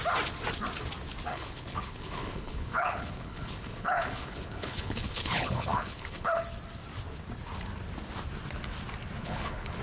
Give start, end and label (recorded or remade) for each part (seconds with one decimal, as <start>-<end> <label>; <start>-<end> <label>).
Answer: 0.0-1.3 recorded; 1.3-6.4 remade; 6.4-9.2 recorded; 9.2-9.8 remade